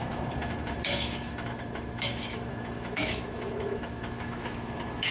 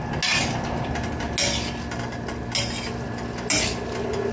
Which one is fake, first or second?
first